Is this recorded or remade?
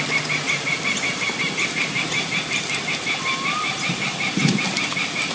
recorded